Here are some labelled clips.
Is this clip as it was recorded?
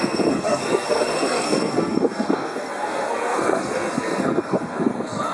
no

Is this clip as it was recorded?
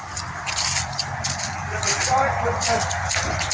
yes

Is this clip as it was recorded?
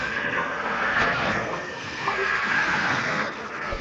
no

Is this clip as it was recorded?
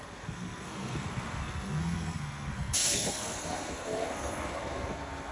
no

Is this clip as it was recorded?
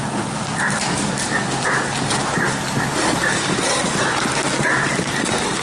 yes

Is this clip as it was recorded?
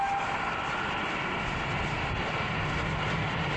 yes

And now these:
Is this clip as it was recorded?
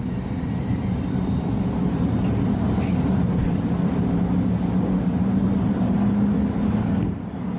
yes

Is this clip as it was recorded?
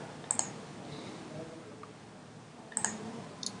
yes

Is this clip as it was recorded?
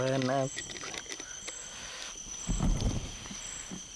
yes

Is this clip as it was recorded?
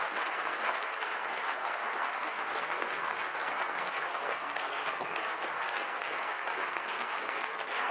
no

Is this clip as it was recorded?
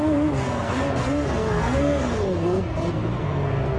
no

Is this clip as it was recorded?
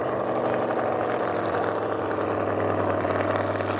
yes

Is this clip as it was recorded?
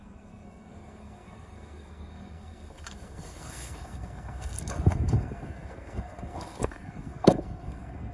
no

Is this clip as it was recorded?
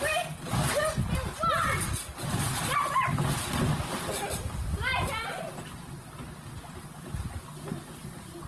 yes